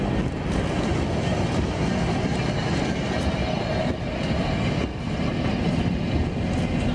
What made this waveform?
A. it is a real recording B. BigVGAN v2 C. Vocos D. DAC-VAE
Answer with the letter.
A